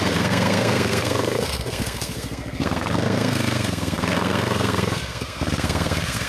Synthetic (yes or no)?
yes